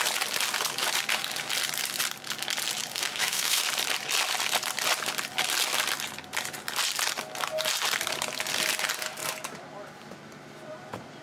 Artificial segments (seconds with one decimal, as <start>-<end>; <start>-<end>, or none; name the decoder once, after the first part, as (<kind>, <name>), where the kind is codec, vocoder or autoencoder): 2.9-3.6 (autoencoder, DAC-VAE)